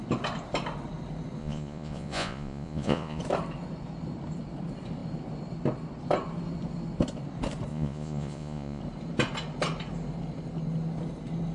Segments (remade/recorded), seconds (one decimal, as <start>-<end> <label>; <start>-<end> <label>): 0.0-1.4 recorded; 1.4-3.2 remade; 3.2-7.7 recorded; 7.7-8.8 remade; 8.8-11.5 recorded